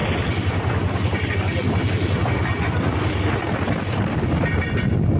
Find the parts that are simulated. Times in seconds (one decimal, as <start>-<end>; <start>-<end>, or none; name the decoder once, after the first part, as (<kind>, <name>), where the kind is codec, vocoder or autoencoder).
none